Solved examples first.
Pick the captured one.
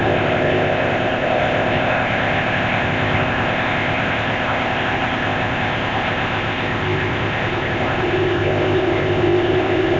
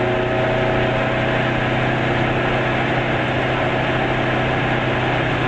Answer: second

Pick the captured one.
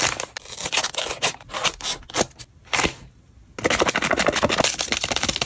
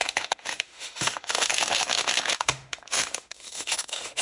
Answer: first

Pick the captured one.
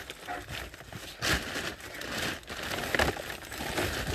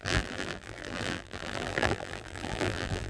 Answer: first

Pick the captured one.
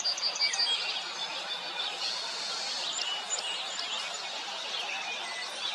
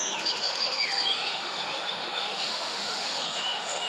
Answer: first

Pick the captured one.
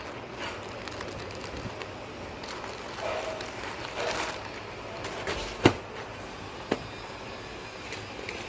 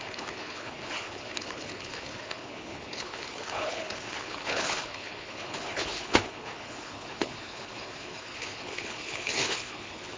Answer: first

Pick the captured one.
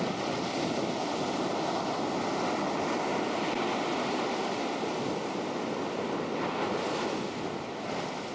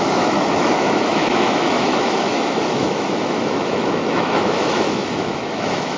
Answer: first